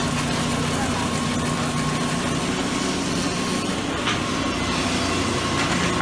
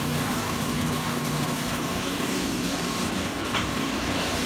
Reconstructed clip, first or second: second